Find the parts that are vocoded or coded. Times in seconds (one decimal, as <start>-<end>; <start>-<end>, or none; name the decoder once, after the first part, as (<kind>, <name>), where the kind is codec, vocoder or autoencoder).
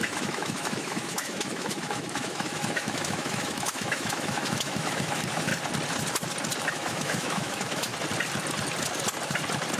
0.0-5.5 (autoencoder, DAC-VAE); 6.7-7.9